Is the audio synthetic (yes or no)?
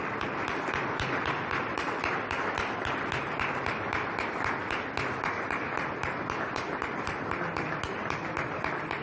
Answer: yes